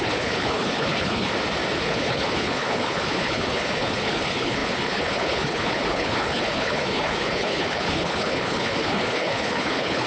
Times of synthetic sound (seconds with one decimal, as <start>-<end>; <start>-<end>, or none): 0.0-1.3; 1.8-10.1